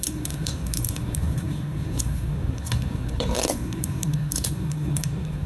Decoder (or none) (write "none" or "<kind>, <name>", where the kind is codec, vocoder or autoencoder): codec, SNAC